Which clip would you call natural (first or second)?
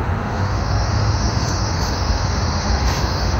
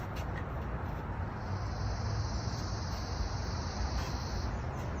second